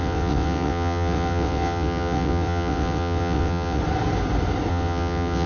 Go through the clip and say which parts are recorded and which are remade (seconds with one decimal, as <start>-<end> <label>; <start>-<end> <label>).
0.0-3.8 remade; 3.8-4.7 recorded; 4.7-5.5 remade